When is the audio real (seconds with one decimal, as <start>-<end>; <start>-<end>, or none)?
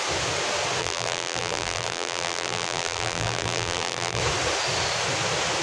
0.0-0.8; 4.2-5.6